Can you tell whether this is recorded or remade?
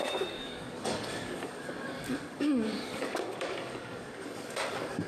remade